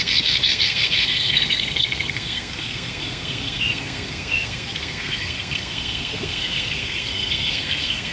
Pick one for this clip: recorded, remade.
remade